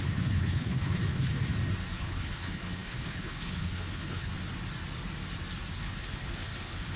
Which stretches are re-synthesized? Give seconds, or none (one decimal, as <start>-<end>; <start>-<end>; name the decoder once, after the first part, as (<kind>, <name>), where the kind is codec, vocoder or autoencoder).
0.0-1.5 (codec, HILCodec); 2.0-4.3; 5.8-7.0